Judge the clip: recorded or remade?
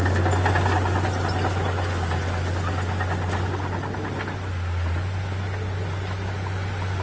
recorded